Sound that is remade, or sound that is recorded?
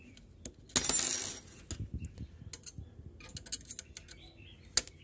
recorded